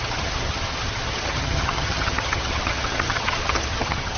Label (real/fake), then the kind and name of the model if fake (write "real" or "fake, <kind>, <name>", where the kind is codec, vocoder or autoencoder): fake, vocoder, HiFi-GAN